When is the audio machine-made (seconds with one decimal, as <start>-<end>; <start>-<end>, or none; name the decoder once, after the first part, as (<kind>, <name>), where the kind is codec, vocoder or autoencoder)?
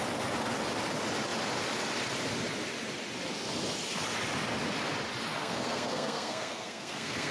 5.4-7.3 (codec, SNAC)